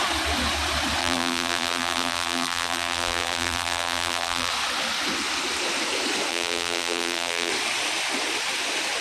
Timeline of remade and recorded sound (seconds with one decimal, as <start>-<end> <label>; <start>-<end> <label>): 0.0-1.0 recorded; 1.0-4.5 remade; 4.5-6.3 recorded; 6.3-7.5 remade; 7.5-9.0 recorded